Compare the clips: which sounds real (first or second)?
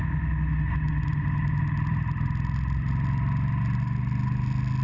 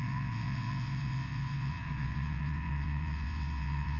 first